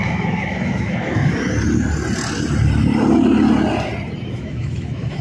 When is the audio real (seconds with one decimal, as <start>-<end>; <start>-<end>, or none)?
1.2-4.3